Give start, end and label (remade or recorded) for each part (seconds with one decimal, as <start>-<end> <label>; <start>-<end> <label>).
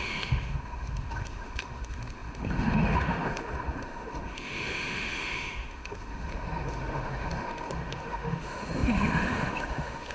0.0-10.1 remade